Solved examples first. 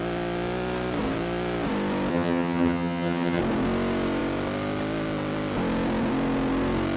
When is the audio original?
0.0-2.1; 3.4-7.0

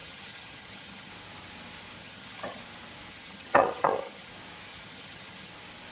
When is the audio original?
1.1-2.0; 2.6-3.1; 4.3-4.7; 5.5-5.9

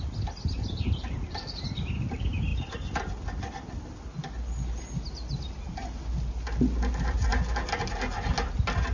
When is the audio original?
0.0-8.9